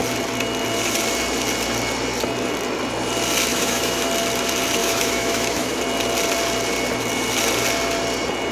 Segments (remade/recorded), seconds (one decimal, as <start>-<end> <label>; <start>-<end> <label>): 0.0-3.5 recorded; 3.5-4.1 remade; 4.1-4.8 recorded; 4.8-5.8 remade; 5.8-8.5 recorded